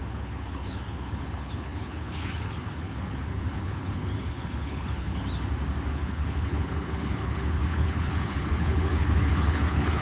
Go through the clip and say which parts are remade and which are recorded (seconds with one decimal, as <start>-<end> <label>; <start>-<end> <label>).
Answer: 0.0-5.2 remade; 5.2-5.9 recorded; 5.9-10.0 remade

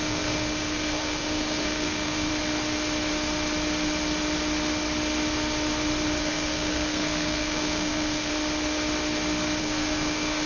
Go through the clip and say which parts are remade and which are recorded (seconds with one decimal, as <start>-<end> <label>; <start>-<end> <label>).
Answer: 0.0-2.3 remade; 2.3-6.2 recorded; 6.2-8.3 remade; 8.3-9.6 recorded; 9.6-10.5 remade

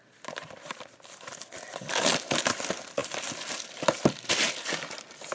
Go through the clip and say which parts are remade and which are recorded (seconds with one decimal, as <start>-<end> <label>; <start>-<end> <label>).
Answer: 0.0-5.3 remade

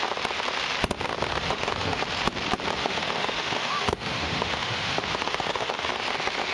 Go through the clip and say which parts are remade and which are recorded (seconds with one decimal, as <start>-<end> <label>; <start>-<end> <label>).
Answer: 0.0-1.3 recorded; 1.3-2.0 remade; 2.0-2.8 recorded; 2.8-5.7 remade; 5.7-6.5 recorded

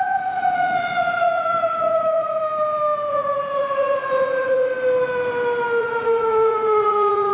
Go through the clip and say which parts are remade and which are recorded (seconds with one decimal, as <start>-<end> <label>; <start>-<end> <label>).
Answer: 0.0-2.4 remade; 2.4-3.1 recorded; 3.1-4.7 remade; 4.7-5.8 recorded; 5.8-7.3 remade

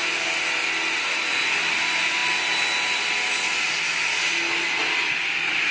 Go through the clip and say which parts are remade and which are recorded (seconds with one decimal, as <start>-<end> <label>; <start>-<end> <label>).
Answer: 0.0-5.7 recorded

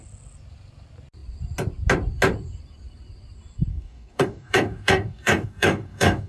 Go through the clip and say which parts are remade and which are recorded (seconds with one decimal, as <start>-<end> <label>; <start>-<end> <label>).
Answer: 0.0-3.7 recorded; 3.7-6.3 remade